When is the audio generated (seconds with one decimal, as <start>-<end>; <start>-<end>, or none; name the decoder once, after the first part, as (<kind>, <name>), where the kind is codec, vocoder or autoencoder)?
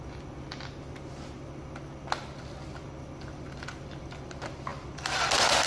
none